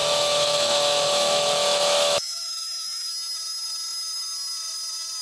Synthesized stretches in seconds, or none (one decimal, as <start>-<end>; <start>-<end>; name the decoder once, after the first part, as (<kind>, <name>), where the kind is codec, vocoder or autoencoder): 0.0-3.1 (autoencoder, DAC-VAE)